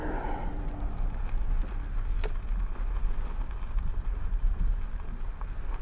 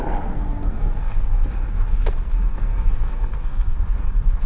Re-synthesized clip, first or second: second